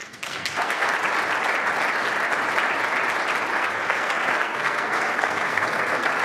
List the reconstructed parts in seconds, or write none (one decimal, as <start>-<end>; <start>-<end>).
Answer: 0.0-0.9; 3.5-6.2